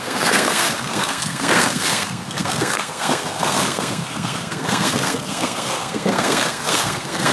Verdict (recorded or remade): remade